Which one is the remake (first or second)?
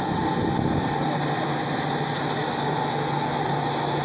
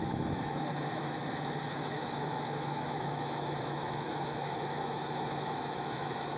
second